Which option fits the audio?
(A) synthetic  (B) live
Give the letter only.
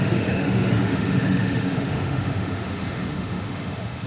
A